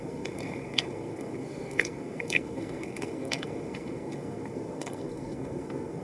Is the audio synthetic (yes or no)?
yes